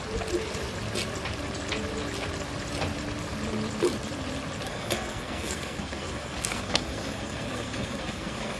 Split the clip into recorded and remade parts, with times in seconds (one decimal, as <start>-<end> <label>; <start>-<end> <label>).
0.0-4.7 recorded; 4.7-8.6 remade